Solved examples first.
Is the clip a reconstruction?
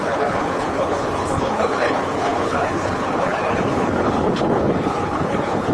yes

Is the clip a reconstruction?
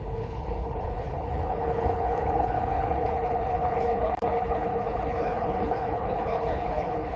yes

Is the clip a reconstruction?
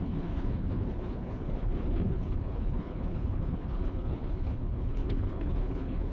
yes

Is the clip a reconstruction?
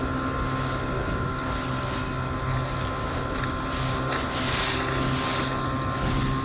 no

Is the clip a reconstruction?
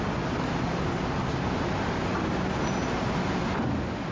no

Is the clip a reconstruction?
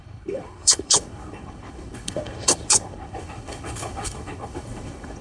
yes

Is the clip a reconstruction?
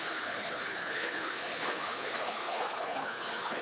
yes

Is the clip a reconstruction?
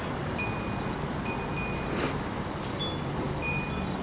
no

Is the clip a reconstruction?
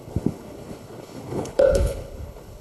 yes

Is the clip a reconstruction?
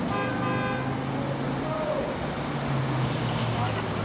no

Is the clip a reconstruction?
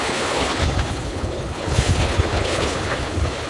yes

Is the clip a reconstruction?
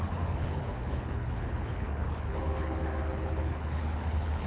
yes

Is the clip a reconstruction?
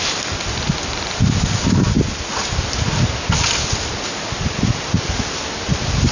no